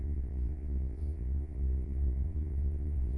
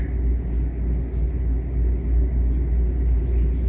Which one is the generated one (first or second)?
first